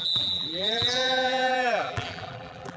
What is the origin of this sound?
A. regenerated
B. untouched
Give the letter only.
A